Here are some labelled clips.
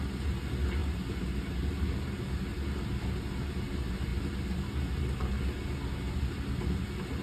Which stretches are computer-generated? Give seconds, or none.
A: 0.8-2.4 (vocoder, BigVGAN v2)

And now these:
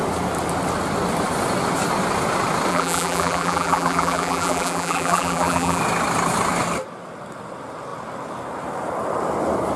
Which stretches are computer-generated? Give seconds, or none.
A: 2.7-5.8 (vocoder, BigVGAN v2)